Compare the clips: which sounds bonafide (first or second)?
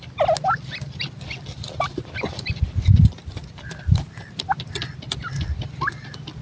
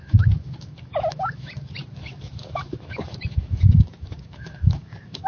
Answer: first